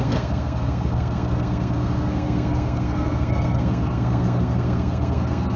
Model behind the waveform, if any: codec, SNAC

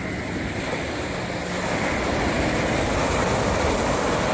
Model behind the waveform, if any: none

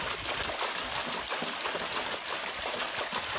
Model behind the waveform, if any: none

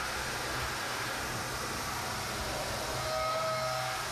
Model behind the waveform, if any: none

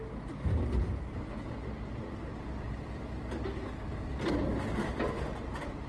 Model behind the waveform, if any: none